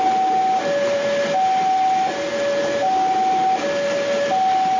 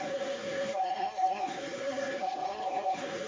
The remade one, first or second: second